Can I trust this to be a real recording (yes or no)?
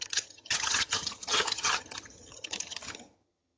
no